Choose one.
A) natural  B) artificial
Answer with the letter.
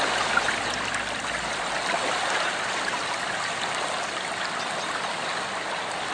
A